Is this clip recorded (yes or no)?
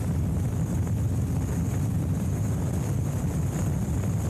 no